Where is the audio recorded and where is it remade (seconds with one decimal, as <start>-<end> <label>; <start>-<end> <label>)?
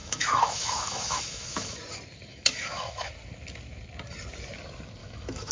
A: 0.0-1.8 remade; 1.8-2.3 recorded; 2.3-3.1 remade; 3.1-5.0 recorded; 5.0-5.5 remade